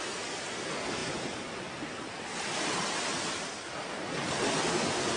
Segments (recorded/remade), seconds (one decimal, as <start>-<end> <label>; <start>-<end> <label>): 0.0-1.0 recorded; 1.0-2.1 remade; 2.1-3.1 recorded; 3.1-4.1 remade; 4.1-5.2 recorded